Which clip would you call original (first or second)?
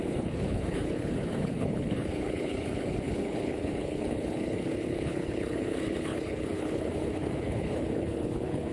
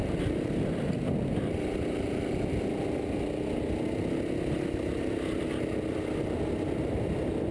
second